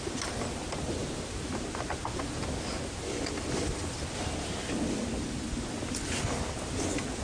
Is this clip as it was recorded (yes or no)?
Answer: yes